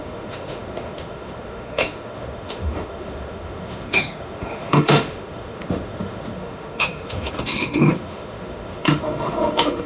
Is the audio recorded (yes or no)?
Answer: no